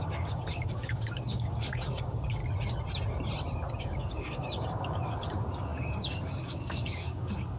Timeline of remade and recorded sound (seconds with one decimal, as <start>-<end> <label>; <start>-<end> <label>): 0.0-2.4 remade; 2.4-3.8 recorded; 3.8-7.6 remade